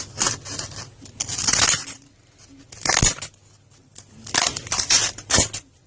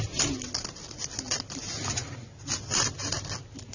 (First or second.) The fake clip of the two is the second